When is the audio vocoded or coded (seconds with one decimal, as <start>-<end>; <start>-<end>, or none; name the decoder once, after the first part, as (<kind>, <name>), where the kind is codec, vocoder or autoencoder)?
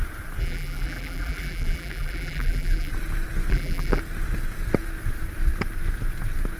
0.4-2.9 (vocoder, BigVGAN v2); 3.5-4.0